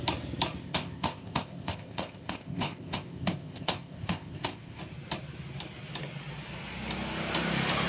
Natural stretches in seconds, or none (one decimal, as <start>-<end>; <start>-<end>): 0.0-0.6; 4.8-7.9